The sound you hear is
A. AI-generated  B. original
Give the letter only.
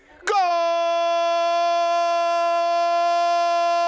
B